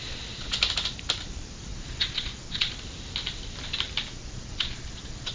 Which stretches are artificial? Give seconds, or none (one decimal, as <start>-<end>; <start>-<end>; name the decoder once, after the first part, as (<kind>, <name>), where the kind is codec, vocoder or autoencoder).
0.0-0.6 (vocoder, Vocos); 1.7-2.7; 4.1-5.3